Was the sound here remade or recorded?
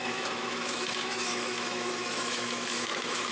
remade